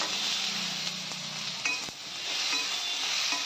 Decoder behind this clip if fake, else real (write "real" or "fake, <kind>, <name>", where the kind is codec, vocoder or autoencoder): real